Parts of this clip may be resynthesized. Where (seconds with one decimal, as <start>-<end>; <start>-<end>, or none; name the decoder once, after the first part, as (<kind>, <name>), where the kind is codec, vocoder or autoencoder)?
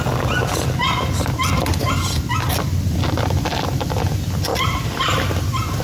4.5-5.0 (vocoder, BigVGAN v2)